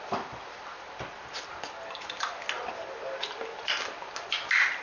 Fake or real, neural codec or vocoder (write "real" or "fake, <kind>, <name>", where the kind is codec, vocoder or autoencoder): real